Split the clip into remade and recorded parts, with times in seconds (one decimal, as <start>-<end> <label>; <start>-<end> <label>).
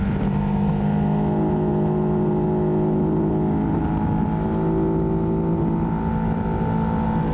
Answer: 0.0-7.3 recorded